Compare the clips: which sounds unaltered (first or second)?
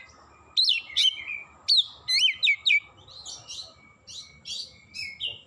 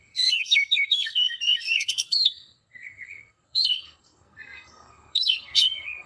first